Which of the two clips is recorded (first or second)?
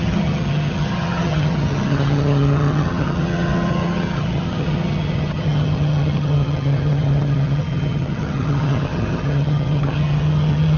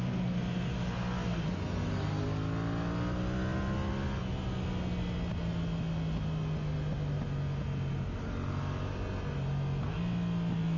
second